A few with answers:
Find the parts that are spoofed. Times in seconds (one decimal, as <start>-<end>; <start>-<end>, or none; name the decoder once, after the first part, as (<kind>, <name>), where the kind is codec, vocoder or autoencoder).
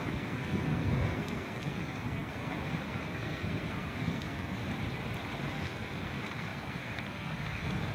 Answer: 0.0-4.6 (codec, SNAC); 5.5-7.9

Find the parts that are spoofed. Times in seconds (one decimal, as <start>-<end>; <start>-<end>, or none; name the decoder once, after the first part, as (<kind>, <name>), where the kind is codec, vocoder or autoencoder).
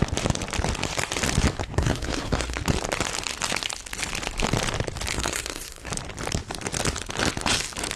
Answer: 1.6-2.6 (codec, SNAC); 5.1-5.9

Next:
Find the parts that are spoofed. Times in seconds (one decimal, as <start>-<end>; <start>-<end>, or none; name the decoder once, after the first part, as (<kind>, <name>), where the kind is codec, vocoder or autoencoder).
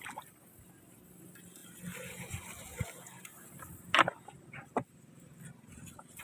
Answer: none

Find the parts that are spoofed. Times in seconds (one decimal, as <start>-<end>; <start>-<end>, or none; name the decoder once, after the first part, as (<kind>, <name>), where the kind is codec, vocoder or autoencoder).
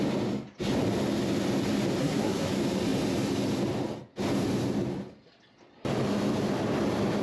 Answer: 2.0-2.5 (codec, SNAC)